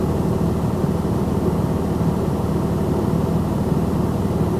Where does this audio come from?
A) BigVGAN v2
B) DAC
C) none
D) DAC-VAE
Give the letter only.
C